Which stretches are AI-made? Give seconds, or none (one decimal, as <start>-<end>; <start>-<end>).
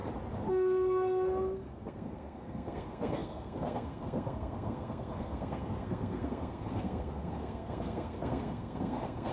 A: 0.5-9.3